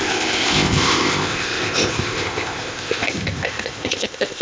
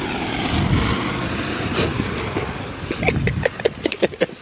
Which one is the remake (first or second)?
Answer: first